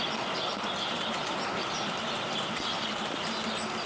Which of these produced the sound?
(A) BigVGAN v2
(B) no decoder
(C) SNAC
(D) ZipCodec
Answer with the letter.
B